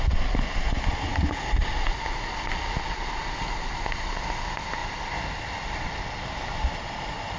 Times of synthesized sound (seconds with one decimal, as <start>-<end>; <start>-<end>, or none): none